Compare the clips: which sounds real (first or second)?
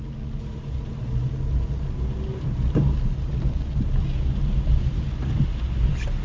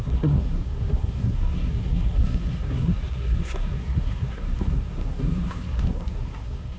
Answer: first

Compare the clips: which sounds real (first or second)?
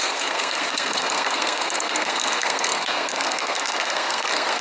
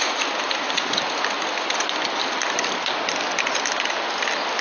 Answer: second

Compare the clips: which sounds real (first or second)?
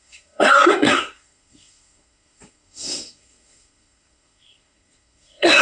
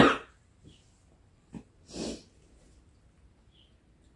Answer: second